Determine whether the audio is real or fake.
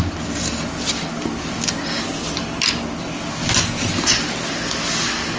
real